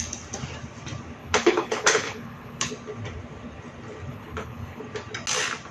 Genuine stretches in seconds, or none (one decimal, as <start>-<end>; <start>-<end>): 0.0-1.2; 2.7-4.1; 4.8-5.7